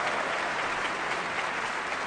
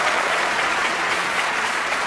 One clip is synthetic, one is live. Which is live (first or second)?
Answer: first